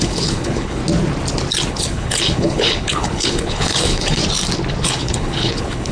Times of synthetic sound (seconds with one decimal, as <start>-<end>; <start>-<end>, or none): 0.0-0.8; 1.7-4.2; 4.8-5.9

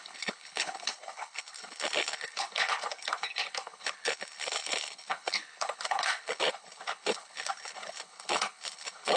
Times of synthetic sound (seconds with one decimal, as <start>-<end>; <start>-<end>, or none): 0.0-9.2

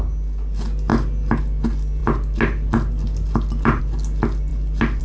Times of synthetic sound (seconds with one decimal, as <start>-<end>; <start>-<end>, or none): none